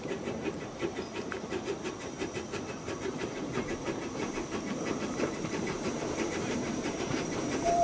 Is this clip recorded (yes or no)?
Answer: no